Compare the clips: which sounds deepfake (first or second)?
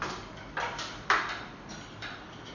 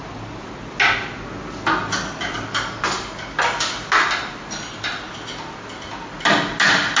first